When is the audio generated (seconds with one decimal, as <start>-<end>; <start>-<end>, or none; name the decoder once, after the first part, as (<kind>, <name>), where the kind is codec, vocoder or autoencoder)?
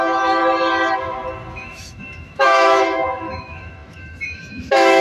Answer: 0.0-0.4 (autoencoder, DAC-VAE); 1.5-5.0